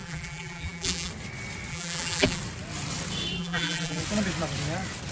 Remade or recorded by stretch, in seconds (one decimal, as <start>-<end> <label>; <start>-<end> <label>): 0.0-1.1 remade; 1.1-1.7 recorded; 1.7-2.4 remade; 2.4-3.4 recorded; 3.4-4.0 remade; 4.0-5.1 recorded